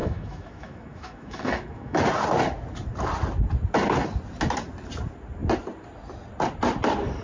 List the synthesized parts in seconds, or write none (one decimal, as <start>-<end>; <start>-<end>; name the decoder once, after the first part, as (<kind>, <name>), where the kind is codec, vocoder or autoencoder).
0.0-2.0 (autoencoder, DAC-VAE)